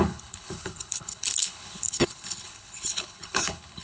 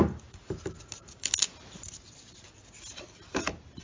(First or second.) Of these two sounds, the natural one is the second